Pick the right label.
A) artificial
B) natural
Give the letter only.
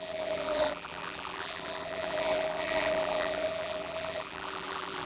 A